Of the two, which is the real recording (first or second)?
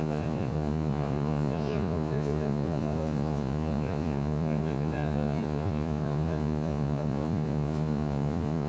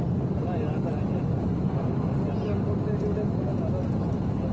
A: second